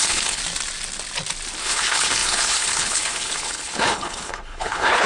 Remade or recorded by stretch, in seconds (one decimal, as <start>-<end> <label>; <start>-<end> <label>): 0.0-0.4 remade; 0.4-1.6 recorded; 1.6-5.1 remade